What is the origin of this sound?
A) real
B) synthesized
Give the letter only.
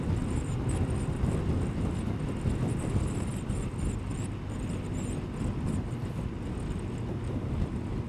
A